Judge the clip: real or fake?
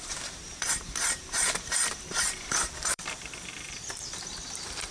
fake